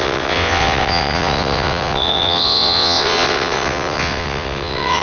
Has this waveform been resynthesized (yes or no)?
yes